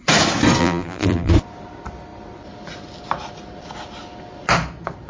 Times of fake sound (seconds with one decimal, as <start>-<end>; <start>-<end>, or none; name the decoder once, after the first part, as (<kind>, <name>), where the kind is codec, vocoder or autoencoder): 0.6-1.3 (vocoder, BigVGAN v2)